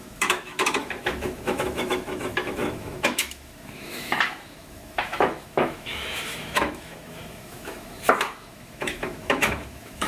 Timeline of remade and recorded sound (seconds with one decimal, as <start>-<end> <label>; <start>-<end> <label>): 0.0-10.1 remade